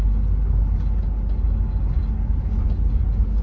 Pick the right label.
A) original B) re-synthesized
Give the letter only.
A